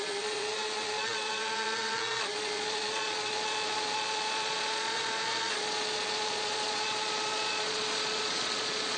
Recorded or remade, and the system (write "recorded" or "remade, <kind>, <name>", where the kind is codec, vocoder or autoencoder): remade, vocoder, Vocos